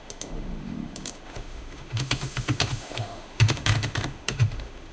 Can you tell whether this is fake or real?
fake